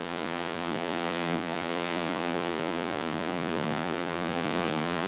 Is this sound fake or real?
fake